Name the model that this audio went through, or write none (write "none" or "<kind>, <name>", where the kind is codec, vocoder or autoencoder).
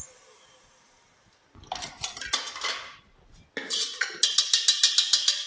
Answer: none